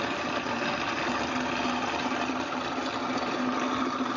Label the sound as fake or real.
real